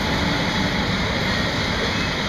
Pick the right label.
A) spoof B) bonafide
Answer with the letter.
B